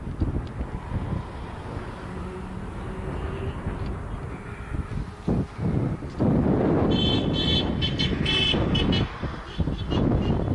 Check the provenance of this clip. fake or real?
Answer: real